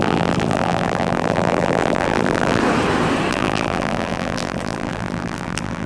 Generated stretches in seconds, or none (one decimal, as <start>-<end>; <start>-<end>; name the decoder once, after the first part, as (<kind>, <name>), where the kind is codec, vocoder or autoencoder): 0.0-2.6 (vocoder, BigVGAN v2); 3.3-5.9